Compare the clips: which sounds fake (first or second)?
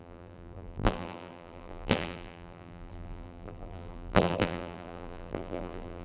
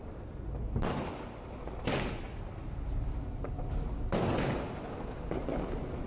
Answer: first